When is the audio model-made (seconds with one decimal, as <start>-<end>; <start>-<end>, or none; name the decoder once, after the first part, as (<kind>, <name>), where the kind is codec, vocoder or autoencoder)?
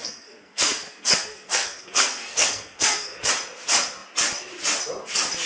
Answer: 0.0-3.3 (codec, SNAC)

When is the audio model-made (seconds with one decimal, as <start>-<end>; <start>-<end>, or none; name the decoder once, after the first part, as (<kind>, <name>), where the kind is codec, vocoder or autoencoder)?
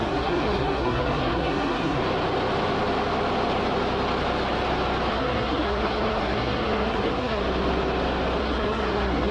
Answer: 0.0-2.0 (codec, SNAC); 5.1-7.4; 8.4-9.3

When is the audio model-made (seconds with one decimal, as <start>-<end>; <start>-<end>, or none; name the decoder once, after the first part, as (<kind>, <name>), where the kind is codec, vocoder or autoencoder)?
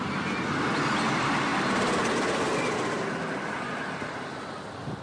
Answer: none